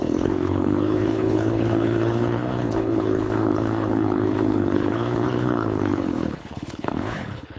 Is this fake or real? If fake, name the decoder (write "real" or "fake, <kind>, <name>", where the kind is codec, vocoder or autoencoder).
fake, codec, HILCodec